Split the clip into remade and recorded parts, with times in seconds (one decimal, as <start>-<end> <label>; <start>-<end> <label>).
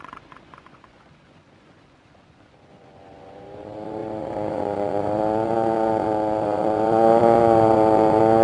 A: 0.0-8.4 remade